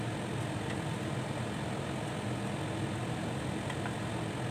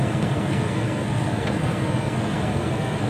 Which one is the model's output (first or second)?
second